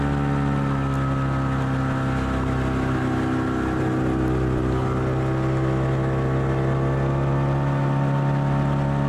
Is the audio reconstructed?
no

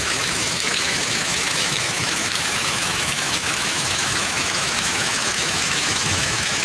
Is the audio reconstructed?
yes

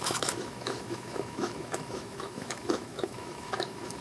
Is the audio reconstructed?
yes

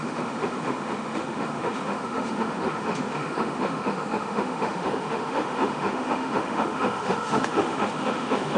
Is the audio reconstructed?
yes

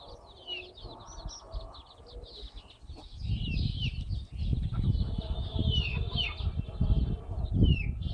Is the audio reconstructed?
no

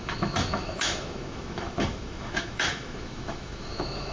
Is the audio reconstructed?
yes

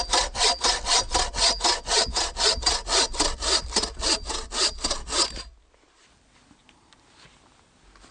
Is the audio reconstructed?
no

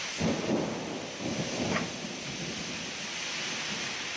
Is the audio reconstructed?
no